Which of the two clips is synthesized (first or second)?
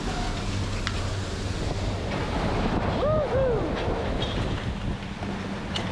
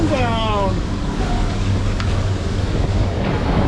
second